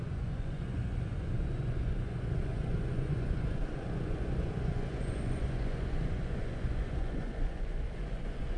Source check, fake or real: fake